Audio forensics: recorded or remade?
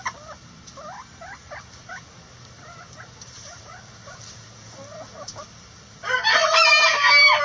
recorded